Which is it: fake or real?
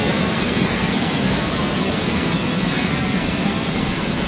fake